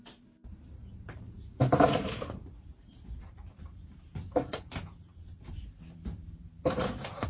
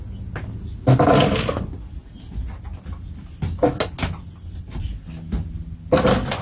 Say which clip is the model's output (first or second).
first